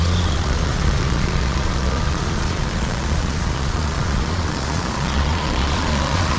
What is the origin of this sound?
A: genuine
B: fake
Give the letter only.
B